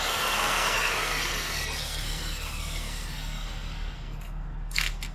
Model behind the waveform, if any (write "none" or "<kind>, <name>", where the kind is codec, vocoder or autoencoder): codec, SNAC